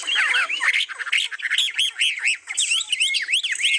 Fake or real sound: real